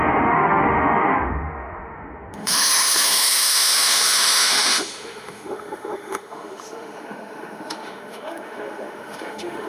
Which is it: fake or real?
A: fake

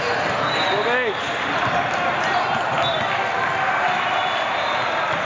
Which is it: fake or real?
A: real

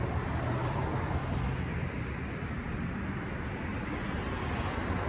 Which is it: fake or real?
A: real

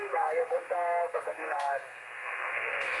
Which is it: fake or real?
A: fake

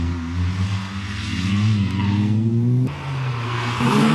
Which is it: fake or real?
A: fake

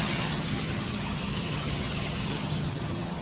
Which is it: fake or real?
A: fake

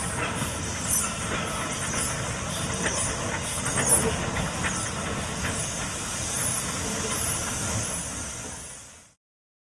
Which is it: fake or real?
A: real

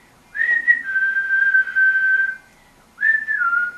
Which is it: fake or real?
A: real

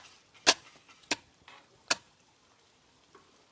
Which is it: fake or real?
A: real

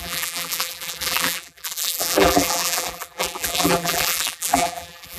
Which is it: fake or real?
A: fake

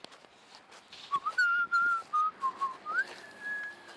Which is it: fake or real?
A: real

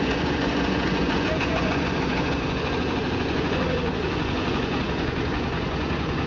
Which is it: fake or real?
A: fake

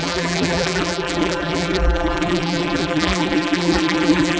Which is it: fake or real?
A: fake